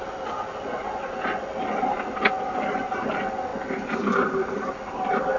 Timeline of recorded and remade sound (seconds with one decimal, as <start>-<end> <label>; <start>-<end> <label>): 0.0-5.4 recorded